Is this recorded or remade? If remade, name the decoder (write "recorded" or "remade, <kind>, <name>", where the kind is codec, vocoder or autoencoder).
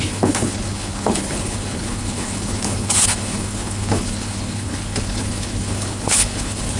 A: remade, codec, HILCodec